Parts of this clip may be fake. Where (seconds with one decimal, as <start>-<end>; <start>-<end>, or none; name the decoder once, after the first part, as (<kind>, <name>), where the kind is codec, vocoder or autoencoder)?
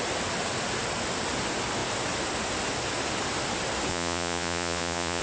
3.9-5.2 (vocoder, Vocos)